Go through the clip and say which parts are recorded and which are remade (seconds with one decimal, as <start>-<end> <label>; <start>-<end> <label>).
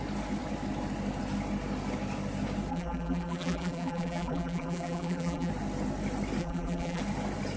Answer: 0.0-2.7 recorded; 2.7-5.5 remade; 5.5-6.4 recorded; 6.4-7.0 remade; 7.0-7.6 recorded